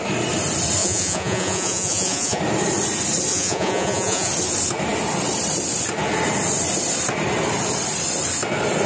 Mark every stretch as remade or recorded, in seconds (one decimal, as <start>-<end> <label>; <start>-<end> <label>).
0.0-0.8 recorded; 0.8-2.4 remade; 2.4-3.3 recorded; 3.3-4.3 remade; 4.3-8.9 recorded